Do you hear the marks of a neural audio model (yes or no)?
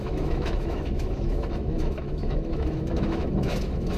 yes